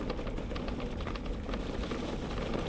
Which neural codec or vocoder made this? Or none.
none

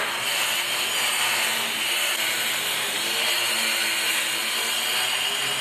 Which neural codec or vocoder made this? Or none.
none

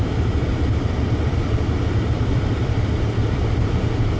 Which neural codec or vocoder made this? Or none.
vocoder, BigVGAN v2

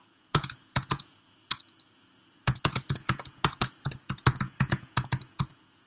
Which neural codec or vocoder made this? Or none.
vocoder, Vocos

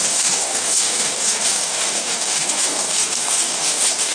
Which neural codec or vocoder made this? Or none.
codec, DAC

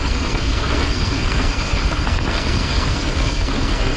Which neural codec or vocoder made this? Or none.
codec, SNAC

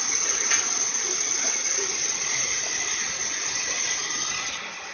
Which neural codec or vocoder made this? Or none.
none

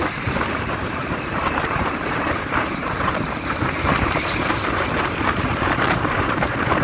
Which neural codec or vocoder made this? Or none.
vocoder, BigVGAN v2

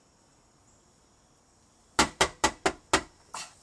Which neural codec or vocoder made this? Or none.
none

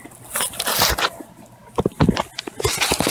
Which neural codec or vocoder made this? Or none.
none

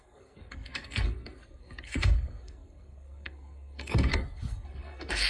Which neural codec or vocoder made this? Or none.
codec, SNAC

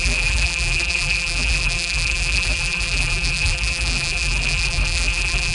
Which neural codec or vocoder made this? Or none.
vocoder, BigVGAN v2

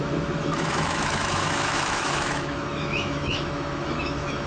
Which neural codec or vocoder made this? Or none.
autoencoder, DAC-VAE